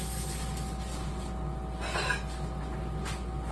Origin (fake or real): real